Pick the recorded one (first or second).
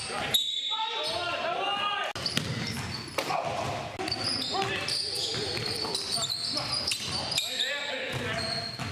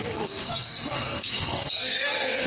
first